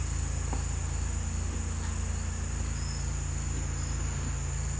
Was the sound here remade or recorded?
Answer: recorded